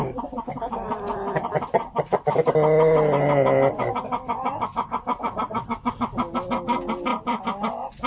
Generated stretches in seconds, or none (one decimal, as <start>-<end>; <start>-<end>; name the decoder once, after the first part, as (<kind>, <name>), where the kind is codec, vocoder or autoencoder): none